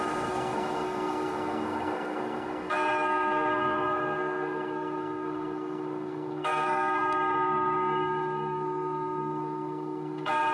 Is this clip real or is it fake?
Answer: fake